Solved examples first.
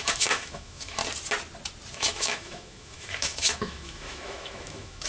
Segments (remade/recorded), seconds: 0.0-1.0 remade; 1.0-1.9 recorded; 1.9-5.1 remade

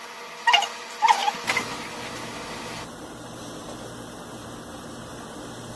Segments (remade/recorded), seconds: 0.0-5.8 recorded